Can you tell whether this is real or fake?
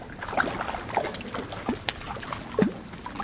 real